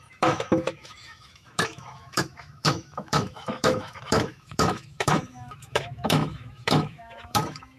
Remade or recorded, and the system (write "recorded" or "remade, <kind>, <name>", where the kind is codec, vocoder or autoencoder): remade, autoencoder, DAC-VAE